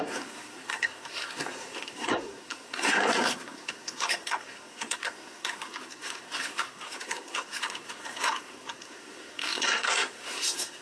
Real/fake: fake